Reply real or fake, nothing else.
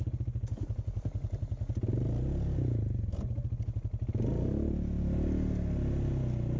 real